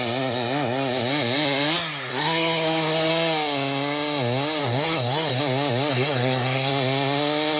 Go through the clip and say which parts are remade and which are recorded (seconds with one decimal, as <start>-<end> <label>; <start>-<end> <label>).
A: 0.0-2.1 recorded; 2.1-3.1 remade; 3.1-4.6 recorded; 4.6-5.4 remade; 5.4-5.9 recorded; 5.9-6.7 remade; 6.7-7.6 recorded